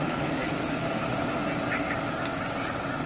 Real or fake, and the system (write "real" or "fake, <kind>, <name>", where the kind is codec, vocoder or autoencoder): real